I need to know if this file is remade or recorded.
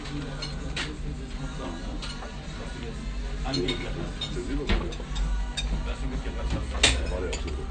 recorded